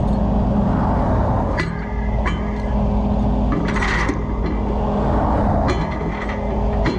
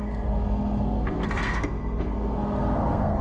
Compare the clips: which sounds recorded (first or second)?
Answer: first